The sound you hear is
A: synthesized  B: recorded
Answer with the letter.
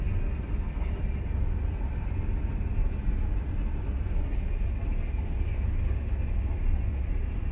B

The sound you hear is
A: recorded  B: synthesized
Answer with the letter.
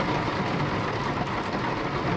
A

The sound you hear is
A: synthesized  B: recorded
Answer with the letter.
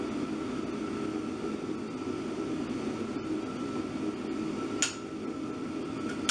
B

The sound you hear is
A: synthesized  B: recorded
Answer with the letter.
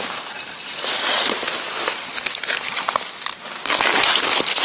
B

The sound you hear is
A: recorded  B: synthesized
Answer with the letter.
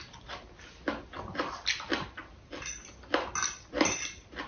A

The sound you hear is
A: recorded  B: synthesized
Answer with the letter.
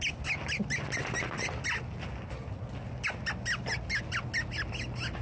A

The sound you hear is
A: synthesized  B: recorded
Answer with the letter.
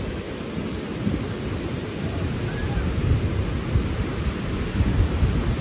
B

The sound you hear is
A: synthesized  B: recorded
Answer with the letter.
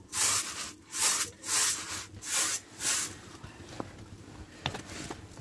B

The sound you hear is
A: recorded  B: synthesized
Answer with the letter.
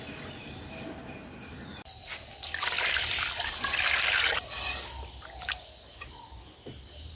A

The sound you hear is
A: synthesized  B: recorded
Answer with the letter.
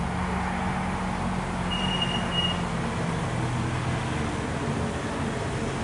B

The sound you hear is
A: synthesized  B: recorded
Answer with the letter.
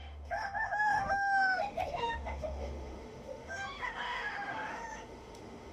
A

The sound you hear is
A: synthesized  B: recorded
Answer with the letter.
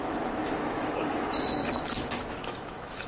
A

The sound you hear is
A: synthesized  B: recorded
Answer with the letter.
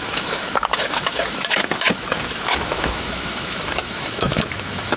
A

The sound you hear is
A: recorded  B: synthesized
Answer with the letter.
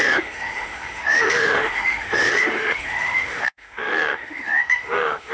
B